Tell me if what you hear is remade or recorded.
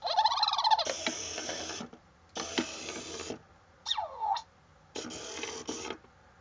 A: recorded